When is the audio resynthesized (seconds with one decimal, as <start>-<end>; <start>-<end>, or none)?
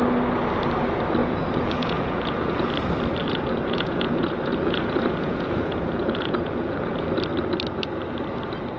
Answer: 1.2-2.7; 3.2-7.0